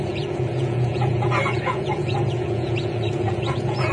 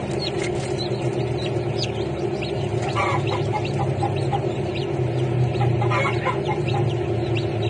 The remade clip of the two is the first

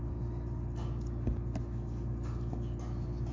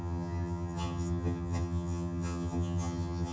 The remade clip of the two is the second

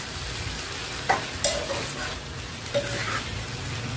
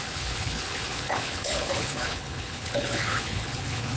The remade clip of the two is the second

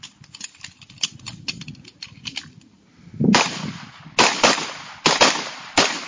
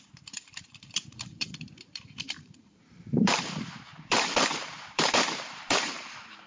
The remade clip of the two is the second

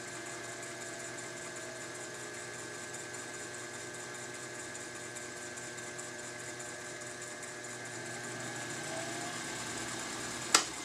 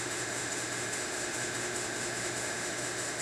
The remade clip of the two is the second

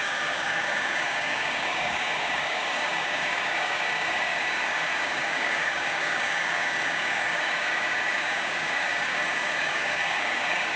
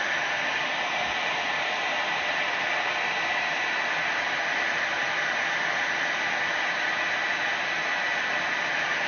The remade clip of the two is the first